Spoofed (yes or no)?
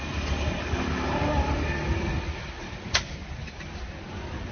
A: no